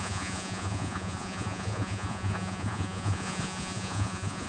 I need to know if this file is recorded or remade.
remade